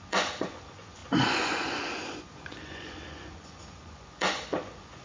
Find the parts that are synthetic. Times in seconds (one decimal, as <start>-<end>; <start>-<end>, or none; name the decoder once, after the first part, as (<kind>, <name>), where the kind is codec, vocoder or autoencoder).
0.0-5.0 (vocoder, Vocos)